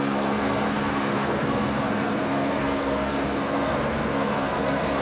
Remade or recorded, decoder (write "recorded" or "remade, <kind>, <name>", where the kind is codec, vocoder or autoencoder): remade, codec, SNAC